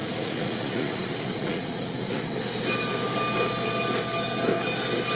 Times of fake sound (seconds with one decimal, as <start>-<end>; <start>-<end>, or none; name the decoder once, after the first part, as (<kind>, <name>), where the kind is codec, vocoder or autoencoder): 0.0-2.4 (vocoder, Vocos)